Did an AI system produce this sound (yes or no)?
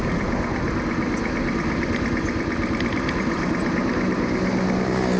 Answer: no